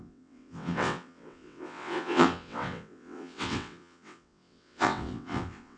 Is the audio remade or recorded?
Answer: remade